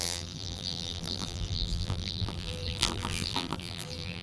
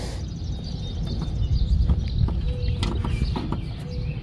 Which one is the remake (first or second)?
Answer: first